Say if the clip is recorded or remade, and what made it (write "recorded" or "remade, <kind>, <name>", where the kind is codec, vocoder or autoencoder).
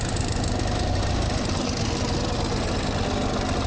recorded